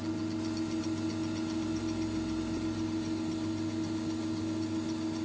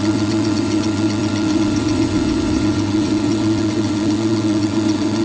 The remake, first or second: second